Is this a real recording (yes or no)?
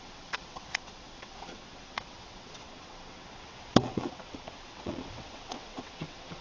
no